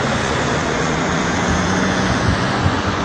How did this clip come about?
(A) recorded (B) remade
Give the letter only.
B